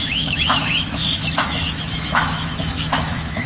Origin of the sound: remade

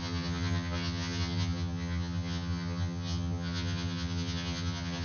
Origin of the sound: remade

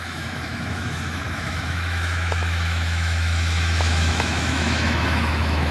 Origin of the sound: remade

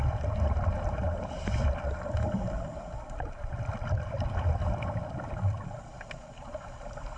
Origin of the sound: remade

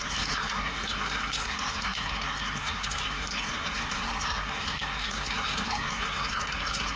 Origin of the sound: remade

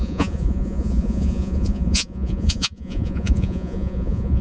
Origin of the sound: remade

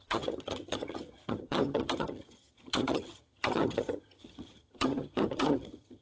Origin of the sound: remade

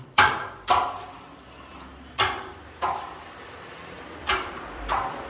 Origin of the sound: remade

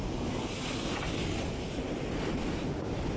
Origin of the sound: recorded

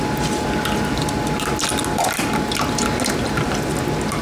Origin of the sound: recorded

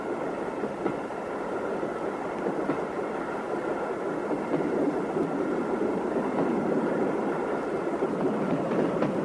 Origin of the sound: recorded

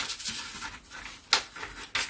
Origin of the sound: recorded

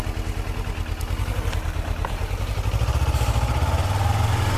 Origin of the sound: recorded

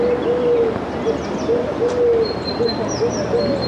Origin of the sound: remade